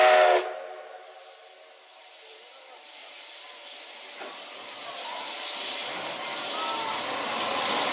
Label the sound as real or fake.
real